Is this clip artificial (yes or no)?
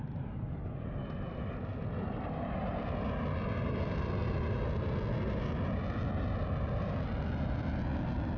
no